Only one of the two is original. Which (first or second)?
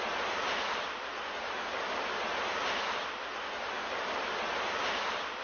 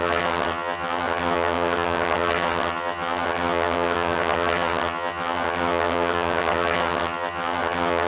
first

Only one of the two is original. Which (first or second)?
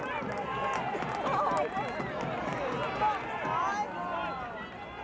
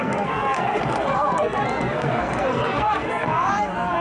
first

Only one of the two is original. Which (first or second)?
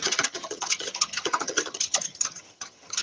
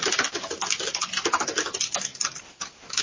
second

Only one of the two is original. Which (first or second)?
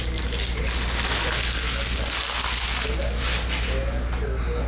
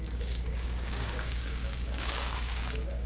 first